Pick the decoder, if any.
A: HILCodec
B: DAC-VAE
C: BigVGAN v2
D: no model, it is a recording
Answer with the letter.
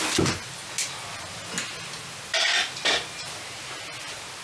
D